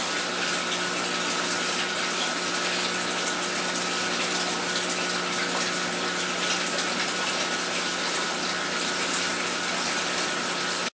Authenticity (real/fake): real